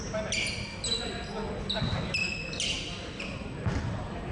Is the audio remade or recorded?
recorded